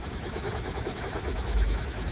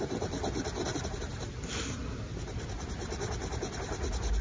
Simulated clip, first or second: first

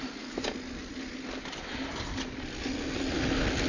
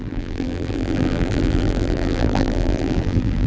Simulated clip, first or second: second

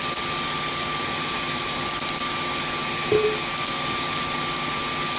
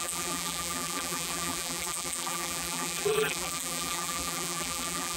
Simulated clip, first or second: second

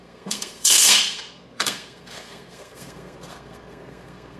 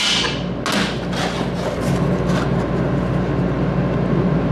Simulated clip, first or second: first